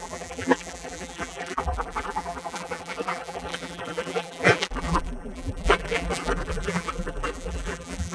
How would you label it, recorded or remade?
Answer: remade